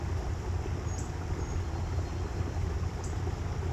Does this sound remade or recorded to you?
recorded